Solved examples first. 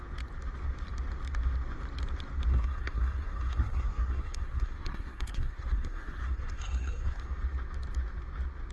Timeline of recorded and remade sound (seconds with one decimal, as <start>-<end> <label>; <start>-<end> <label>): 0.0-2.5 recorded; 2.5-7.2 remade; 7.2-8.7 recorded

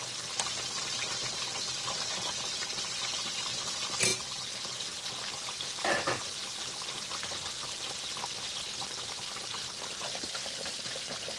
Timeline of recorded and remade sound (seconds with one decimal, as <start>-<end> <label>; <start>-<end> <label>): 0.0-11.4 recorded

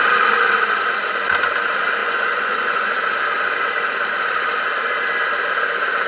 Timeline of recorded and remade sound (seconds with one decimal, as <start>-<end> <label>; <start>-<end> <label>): 0.0-2.0 recorded; 2.0-2.9 remade; 2.9-6.1 recorded

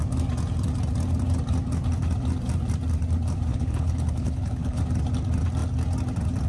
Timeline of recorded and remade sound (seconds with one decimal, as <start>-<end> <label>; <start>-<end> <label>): 0.0-3.5 recorded; 3.5-4.8 remade; 4.8-6.5 recorded

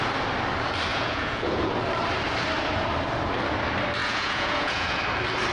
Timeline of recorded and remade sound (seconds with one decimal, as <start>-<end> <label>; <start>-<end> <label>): 0.0-0.9 recorded; 0.9-1.7 remade; 1.7-4.0 recorded; 4.0-5.0 remade; 5.0-5.5 recorded

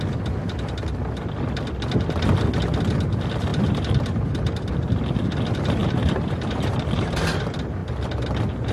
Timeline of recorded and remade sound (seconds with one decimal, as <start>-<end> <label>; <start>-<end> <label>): 0.0-3.5 recorded; 3.5-4.7 remade; 4.7-5.8 recorded; 5.8-7.2 remade; 7.2-8.7 recorded